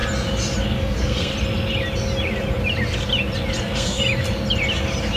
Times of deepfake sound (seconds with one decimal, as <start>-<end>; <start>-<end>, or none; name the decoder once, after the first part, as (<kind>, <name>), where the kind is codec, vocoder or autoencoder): 0.6-1.3 (codec, SNAC); 3.6-4.0